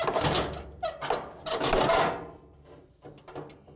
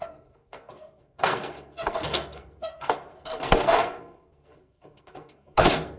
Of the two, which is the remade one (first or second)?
second